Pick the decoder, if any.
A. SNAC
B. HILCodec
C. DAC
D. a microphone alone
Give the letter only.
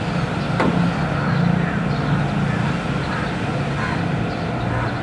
D